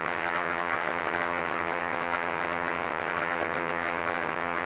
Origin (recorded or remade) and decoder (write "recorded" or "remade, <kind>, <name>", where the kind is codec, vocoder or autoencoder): remade, vocoder, HiFi-GAN